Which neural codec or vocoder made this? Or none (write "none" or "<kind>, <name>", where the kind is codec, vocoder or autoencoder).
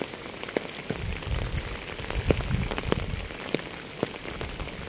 none